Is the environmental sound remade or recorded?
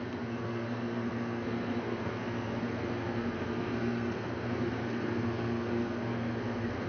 remade